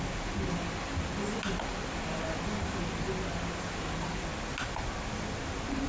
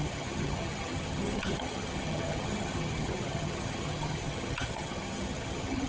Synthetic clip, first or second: second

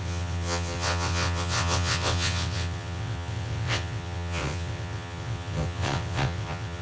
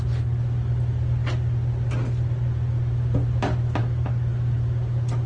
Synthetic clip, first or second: first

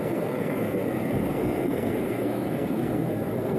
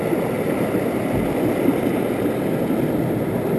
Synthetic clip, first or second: first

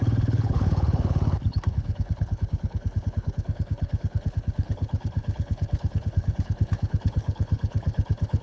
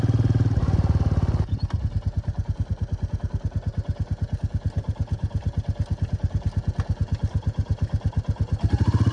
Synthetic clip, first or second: first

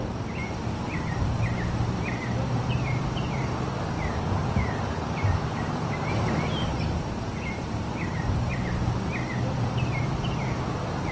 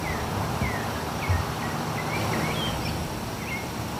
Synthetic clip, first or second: first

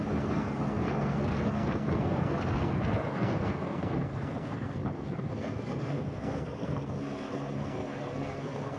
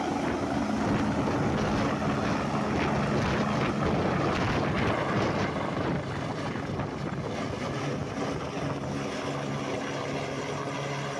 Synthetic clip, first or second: first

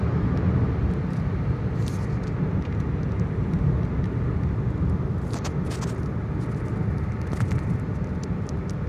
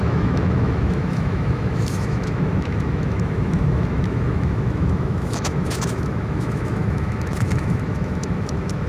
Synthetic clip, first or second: second